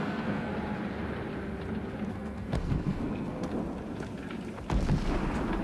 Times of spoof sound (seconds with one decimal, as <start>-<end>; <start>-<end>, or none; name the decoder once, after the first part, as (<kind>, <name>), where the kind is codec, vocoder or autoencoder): 0.0-0.5 (codec, SNAC); 2.1-3.5